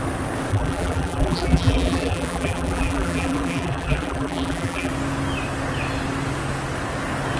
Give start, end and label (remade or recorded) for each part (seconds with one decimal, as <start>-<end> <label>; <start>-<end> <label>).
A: 0.0-0.5 recorded; 0.5-4.9 remade; 4.9-7.4 recorded